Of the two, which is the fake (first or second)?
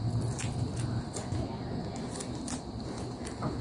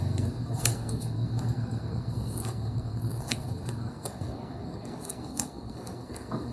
second